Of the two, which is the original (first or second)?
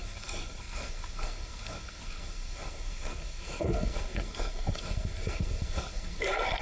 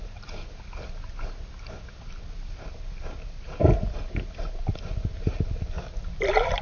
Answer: second